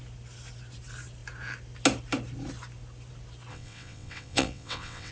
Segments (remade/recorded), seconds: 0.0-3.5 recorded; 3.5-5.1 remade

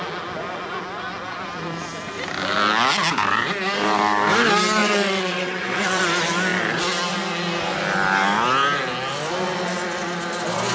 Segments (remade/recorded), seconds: 0.0-4.8 recorded; 4.8-6.0 remade; 6.0-10.7 recorded